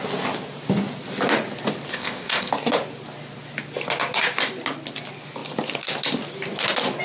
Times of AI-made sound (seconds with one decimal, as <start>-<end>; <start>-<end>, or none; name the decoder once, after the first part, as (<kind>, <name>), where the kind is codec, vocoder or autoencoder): 1.9-2.5 (codec, ZipCodec)